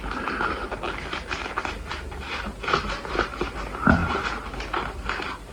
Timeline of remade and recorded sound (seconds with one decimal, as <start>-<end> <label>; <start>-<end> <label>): 0.0-5.5 recorded